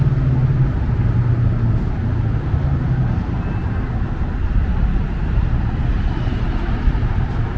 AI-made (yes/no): no